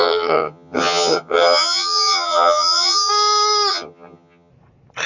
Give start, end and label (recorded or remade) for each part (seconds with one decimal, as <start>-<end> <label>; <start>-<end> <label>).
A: 0.0-3.1 remade; 3.1-3.7 recorded; 3.7-4.5 remade; 4.5-5.1 recorded